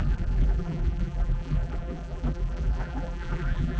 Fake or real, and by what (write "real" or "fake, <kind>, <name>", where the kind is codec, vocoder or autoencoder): fake, vocoder, BigVGAN v2